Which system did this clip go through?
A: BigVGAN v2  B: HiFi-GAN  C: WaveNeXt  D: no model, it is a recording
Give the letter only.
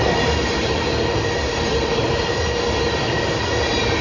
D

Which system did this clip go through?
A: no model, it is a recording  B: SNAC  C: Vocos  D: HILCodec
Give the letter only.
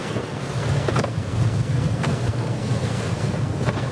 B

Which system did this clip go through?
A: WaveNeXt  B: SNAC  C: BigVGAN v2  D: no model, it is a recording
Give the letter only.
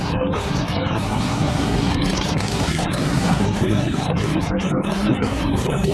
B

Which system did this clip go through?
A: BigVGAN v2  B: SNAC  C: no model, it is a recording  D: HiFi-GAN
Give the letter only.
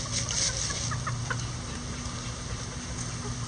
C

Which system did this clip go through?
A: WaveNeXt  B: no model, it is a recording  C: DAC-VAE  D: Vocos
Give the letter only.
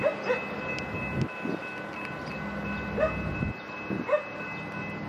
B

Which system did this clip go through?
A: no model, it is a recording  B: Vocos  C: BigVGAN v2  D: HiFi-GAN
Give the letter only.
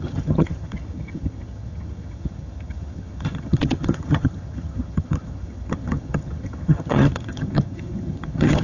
D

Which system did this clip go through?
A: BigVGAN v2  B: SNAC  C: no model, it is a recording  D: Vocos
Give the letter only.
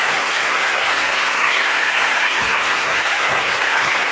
B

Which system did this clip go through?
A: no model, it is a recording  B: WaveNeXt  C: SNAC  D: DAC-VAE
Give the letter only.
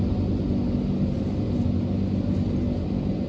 A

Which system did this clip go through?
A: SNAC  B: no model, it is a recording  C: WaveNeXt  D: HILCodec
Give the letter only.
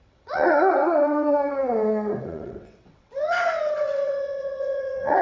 C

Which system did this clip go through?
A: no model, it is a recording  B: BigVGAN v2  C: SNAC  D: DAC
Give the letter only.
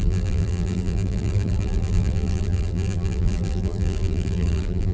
B